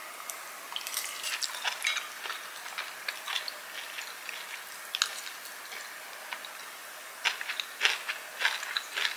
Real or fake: real